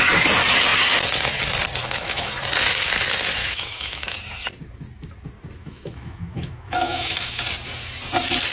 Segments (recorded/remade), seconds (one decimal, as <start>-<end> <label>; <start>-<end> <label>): 0.0-1.8 recorded; 1.8-2.3 remade; 2.3-3.4 recorded; 3.4-4.2 remade; 4.2-5.6 recorded; 5.6-7.4 remade; 7.4-8.5 recorded